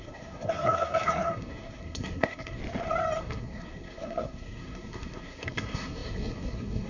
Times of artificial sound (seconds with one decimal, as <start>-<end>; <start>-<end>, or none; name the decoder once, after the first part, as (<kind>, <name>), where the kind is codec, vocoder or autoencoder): 0.0-2.6 (codec, SNAC); 3.2-6.9